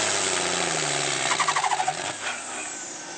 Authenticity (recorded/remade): recorded